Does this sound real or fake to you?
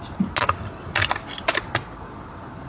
real